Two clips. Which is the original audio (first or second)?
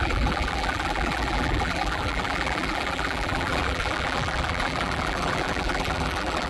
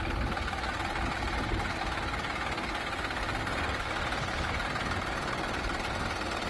second